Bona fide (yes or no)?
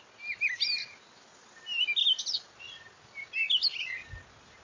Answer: yes